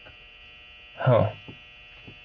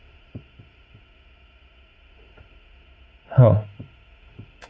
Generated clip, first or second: second